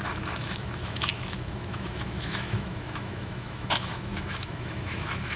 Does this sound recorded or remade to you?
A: remade